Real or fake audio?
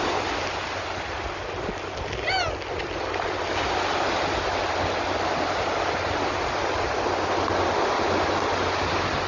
real